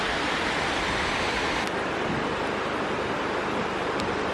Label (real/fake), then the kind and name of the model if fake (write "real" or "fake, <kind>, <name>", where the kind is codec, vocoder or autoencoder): real